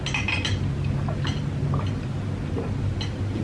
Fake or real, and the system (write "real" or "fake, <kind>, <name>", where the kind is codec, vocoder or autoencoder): real